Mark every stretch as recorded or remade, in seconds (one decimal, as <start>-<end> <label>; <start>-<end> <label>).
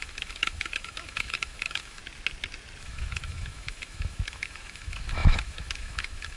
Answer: 0.0-2.0 remade; 2.0-2.8 recorded; 2.8-6.4 remade